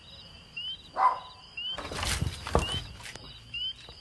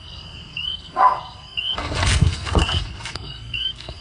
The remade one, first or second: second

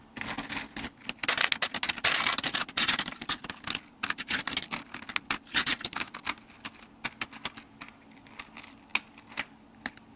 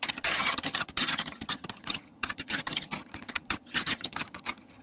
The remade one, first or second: second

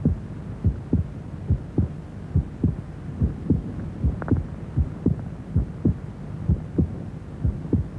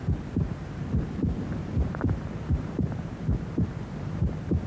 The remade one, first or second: second